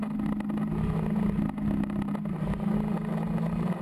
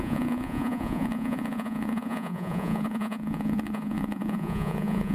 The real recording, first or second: first